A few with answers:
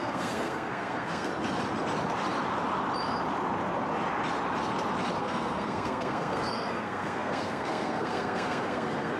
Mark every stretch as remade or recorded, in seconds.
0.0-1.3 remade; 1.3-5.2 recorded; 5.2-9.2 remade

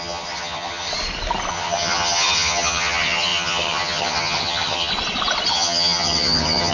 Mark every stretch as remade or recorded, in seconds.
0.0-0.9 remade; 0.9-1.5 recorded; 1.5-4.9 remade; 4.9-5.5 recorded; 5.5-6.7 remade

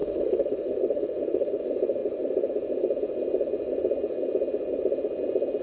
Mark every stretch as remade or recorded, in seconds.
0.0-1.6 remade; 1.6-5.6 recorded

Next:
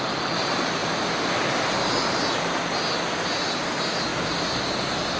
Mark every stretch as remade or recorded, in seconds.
0.0-0.8 recorded; 0.8-1.7 remade; 1.7-4.1 recorded; 4.1-4.6 remade; 4.6-5.2 recorded